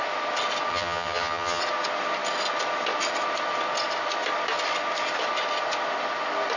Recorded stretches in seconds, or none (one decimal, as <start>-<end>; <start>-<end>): 0.0-0.7; 1.6-6.6